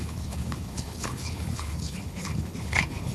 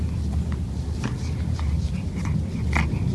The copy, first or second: first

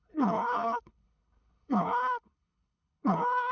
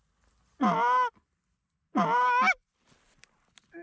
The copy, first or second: first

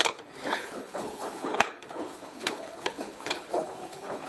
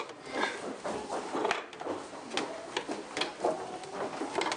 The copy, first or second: first